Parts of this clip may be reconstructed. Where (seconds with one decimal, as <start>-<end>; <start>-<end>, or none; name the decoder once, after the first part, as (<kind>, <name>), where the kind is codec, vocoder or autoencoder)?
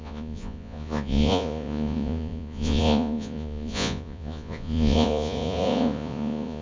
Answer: 0.0-6.6 (vocoder, Vocos)